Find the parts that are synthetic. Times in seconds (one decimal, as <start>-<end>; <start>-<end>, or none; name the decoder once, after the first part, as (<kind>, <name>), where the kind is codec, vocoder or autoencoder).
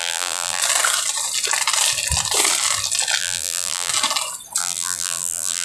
0.0-0.6 (vocoder, BigVGAN v2); 3.2-3.9; 4.6-5.6